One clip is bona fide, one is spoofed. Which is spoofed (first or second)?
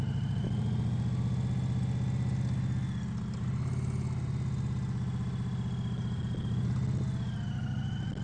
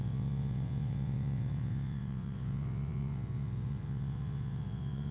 second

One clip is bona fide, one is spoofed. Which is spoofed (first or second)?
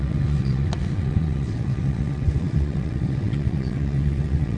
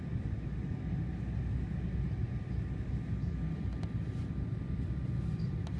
first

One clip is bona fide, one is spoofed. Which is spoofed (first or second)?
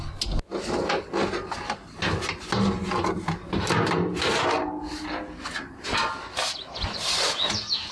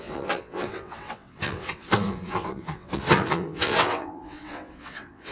second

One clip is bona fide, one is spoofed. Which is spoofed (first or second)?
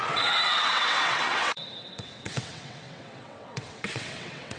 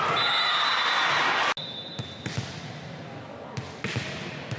first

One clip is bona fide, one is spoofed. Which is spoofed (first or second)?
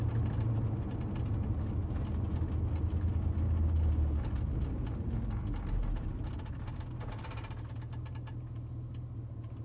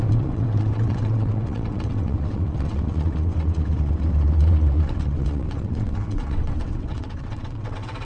second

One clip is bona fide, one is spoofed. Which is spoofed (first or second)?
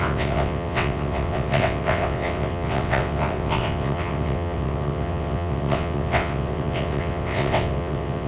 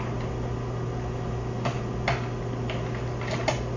first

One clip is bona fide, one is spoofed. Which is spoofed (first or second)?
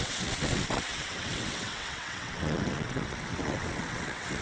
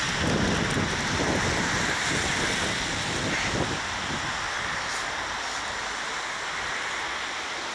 first